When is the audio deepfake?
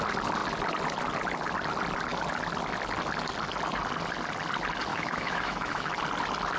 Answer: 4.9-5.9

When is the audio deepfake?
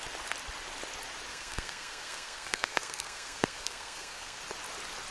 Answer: 1.3-4.4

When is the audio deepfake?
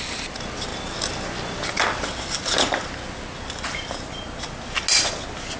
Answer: none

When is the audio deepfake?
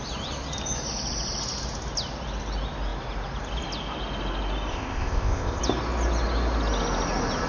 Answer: 4.7-5.6